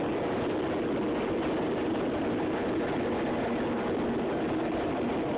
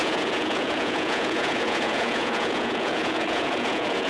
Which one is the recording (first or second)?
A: first